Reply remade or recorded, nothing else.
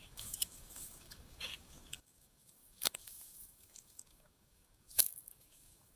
remade